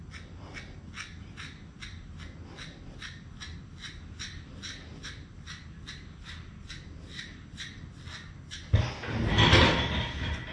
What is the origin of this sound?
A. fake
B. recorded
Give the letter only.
B